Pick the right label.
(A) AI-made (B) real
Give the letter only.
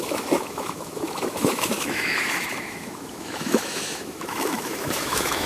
A